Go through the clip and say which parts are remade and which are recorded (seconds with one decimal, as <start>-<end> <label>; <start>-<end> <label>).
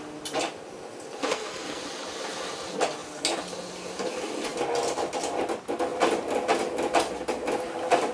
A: 0.0-1.2 recorded; 1.2-1.8 remade; 1.8-8.1 recorded